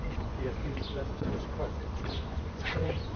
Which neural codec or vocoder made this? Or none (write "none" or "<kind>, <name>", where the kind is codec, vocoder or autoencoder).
vocoder, Vocos